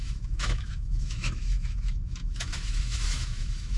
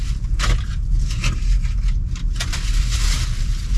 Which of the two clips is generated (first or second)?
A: first